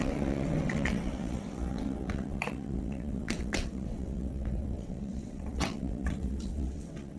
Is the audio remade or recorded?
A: remade